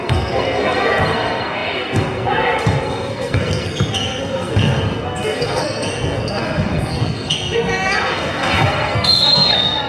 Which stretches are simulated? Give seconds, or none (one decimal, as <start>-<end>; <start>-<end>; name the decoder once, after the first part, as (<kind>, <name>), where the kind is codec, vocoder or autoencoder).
0.0-9.9 (codec, SNAC)